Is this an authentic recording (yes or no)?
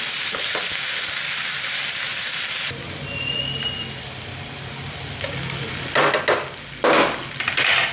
yes